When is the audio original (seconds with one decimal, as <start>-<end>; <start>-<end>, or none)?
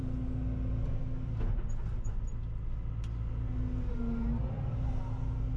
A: 0.0-5.6